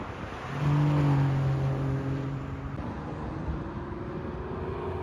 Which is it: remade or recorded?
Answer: recorded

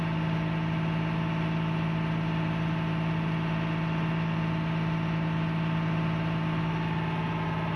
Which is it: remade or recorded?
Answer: recorded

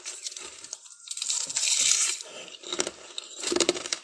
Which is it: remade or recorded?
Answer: remade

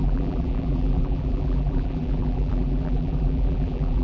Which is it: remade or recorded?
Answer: remade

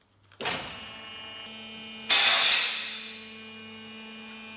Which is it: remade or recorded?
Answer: recorded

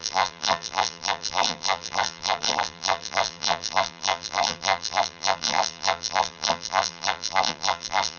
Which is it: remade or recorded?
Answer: remade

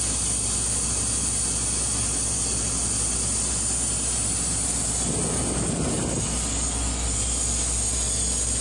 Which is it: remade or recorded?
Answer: recorded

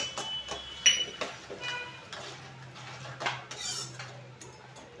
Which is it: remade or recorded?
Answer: recorded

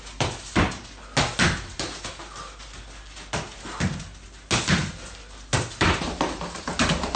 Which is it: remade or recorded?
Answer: recorded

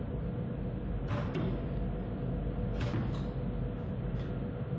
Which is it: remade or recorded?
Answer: recorded